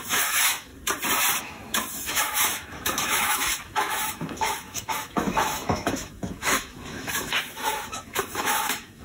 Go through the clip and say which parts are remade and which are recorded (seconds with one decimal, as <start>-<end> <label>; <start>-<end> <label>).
0.0-0.7 remade; 0.7-1.4 recorded; 1.4-9.0 remade